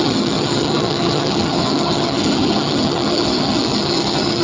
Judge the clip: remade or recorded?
remade